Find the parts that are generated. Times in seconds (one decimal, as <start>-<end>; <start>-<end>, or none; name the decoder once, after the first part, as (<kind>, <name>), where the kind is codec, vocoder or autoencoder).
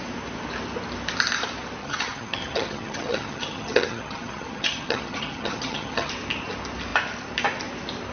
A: 1.8-6.1 (vocoder, HiFi-GAN)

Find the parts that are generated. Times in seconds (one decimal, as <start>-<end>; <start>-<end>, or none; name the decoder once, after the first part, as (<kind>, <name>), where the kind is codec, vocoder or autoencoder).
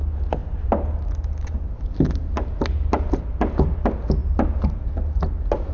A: none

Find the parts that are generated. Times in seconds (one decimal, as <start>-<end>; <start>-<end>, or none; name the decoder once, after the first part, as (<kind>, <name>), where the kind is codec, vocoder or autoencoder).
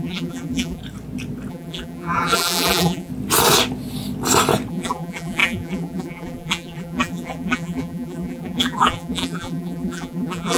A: 0.0-0.8 (vocoder, BigVGAN v2); 1.5-3.1; 4.7-10.6